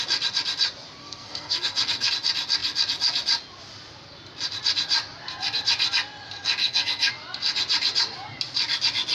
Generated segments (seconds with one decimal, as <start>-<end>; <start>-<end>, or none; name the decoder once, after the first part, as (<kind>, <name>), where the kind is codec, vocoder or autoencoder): 1.0-2.1 (codec, SNAC); 6.6-7.1